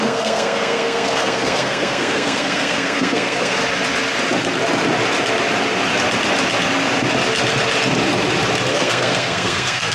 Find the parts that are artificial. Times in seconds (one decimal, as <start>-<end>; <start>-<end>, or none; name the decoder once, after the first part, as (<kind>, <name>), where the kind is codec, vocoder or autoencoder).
0.0-3.6 (codec, SNAC); 8.7-9.9